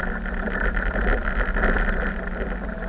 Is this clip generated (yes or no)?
no